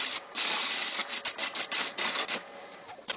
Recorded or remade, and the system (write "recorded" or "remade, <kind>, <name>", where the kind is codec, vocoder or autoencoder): recorded